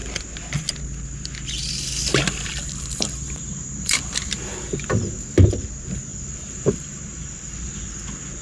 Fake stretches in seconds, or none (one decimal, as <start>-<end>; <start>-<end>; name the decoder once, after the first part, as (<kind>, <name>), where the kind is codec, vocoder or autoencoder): 2.5-5.5 (vocoder, BigVGAN v2); 6.1-7.8